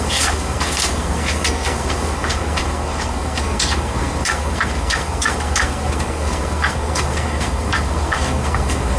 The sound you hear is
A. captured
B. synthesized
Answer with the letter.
B